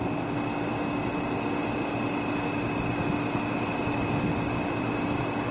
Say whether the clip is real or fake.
real